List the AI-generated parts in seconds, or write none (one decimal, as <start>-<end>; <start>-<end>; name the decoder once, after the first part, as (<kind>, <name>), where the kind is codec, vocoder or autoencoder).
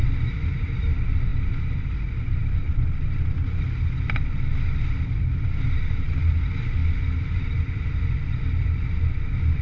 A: none